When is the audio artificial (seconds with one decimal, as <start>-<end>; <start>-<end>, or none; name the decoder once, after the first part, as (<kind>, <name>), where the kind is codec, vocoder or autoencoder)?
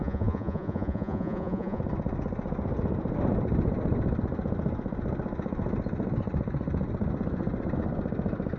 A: 0.0-1.8 (vocoder, Vocos)